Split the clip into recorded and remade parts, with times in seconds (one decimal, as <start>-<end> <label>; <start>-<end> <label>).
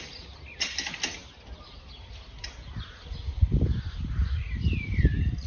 0.0-5.5 recorded